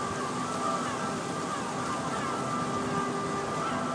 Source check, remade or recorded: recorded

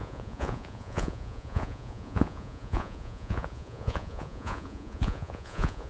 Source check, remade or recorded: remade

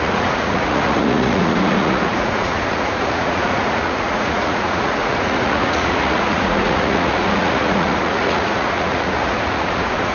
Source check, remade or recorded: remade